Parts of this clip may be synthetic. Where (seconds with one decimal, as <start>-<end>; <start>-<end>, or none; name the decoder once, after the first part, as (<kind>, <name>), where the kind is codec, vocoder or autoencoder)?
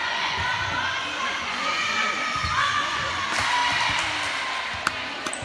0.0-3.2 (vocoder, Vocos)